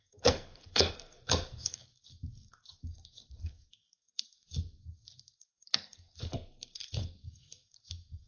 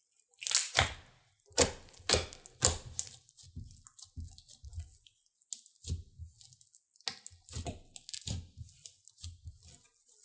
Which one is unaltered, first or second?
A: second